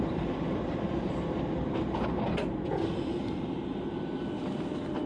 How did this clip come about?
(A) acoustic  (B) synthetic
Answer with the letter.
A